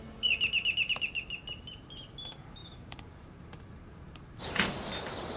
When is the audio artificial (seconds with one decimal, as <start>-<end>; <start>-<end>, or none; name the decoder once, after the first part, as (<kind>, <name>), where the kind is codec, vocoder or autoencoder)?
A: 2.6-4.7 (vocoder, BigVGAN v2)